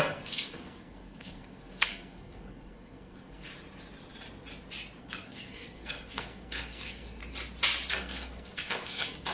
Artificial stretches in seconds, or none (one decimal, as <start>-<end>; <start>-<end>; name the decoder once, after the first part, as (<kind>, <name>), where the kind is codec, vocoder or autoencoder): 0.0-3.5 (codec, SNAC); 5.0-7.2; 7.9-9.3